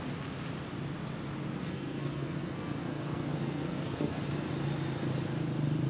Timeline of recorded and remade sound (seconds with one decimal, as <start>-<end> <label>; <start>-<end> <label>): 0.0-1.6 recorded; 1.6-4.2 remade; 4.2-5.9 recorded